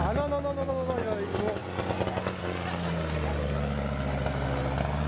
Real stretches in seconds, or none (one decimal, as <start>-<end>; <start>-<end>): 0.0-5.1